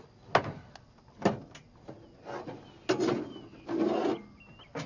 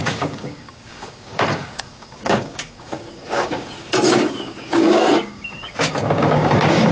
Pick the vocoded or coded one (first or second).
second